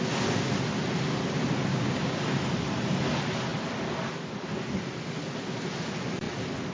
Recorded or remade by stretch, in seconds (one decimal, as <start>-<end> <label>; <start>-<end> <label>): 0.0-1.7 recorded; 1.7-2.2 remade; 2.2-6.7 recorded